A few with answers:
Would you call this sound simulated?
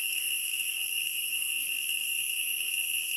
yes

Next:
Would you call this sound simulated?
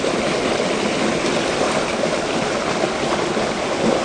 no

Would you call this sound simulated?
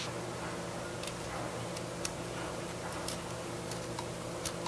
no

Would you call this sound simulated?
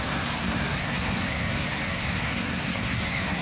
yes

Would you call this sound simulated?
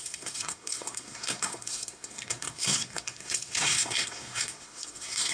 yes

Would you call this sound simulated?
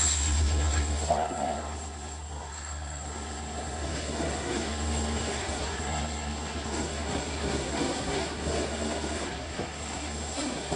yes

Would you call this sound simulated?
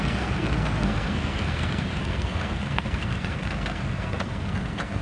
yes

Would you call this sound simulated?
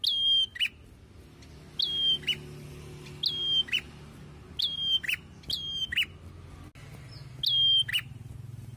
no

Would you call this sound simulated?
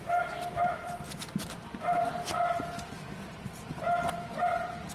no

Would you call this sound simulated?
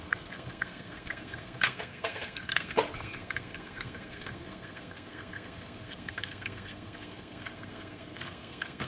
yes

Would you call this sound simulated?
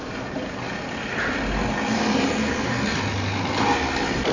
no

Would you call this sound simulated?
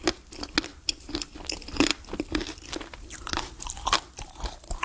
no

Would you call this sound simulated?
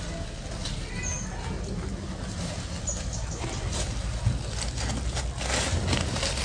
no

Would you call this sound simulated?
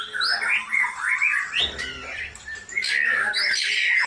no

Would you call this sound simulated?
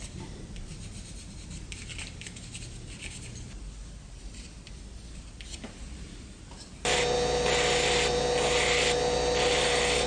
no